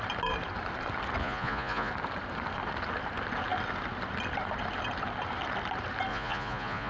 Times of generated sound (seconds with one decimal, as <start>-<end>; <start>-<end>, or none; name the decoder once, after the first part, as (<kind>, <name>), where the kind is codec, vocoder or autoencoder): 1.2-1.9 (vocoder, Vocos); 6.1-6.9